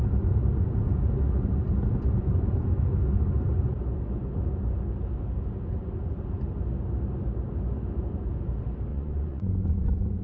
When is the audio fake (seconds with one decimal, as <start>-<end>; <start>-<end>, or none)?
8.9-10.2